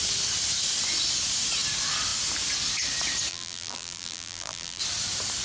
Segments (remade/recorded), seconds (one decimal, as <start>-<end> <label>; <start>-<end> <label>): 0.0-3.3 recorded; 3.3-4.8 remade; 4.8-5.4 recorded